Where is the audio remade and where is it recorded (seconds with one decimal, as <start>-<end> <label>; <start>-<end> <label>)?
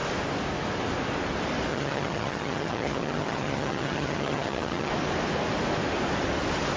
0.0-1.7 recorded; 1.7-4.9 remade; 4.9-6.8 recorded